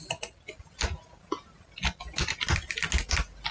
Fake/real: real